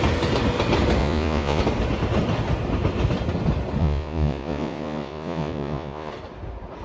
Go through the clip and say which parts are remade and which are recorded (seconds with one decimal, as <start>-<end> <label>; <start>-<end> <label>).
0.0-1.0 recorded; 1.0-1.6 remade; 1.6-3.8 recorded; 3.8-6.1 remade; 6.1-6.8 recorded